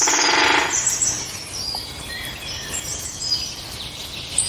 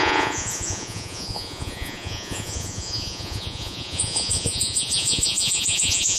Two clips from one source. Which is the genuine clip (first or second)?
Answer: first